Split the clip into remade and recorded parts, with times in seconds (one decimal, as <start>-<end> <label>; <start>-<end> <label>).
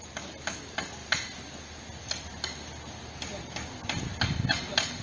0.0-5.0 recorded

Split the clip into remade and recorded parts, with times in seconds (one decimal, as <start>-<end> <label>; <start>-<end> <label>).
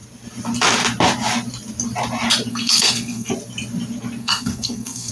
0.0-2.5 recorded; 2.5-3.3 remade; 3.3-4.2 recorded; 4.2-5.1 remade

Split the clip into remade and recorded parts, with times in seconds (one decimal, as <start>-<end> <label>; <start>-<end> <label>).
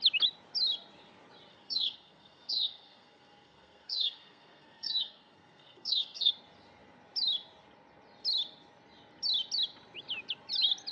0.0-1.5 recorded; 1.5-6.3 remade; 6.3-10.9 recorded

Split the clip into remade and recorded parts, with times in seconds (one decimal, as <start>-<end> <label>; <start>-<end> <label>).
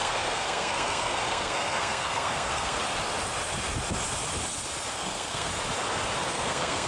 0.0-2.8 remade; 2.8-4.9 recorded; 4.9-5.5 remade; 5.5-6.2 recorded; 6.2-6.9 remade